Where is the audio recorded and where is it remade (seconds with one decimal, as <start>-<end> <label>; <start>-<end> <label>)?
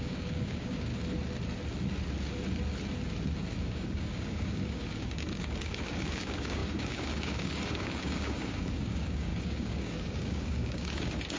0.0-0.9 remade; 0.9-3.6 recorded; 3.6-11.4 remade